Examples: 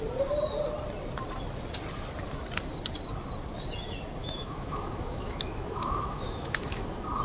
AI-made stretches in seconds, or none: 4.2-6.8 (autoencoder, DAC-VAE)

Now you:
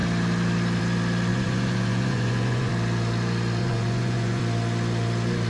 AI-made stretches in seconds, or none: 1.3-2.7 (vocoder, Vocos); 3.6-4.4

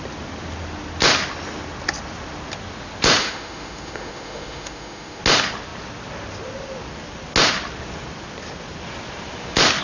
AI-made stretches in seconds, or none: 3.2-5.2 (autoencoder, DAC-VAE)

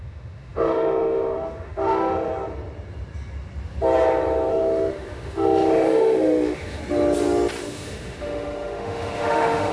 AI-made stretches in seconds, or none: 0.0-2.3 (autoencoder, DAC-VAE); 4.5-6.8; 7.6-9.7

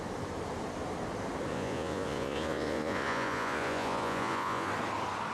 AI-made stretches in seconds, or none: 1.5-4.7 (vocoder, Vocos)

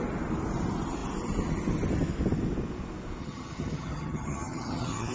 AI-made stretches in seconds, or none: 3.2-5.1 (vocoder, HiFi-GAN)

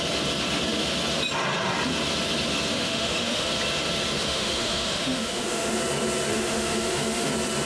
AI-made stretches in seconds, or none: 2.7-3.5 (autoencoder, DAC-VAE); 4.2-5.8; 6.3-7.3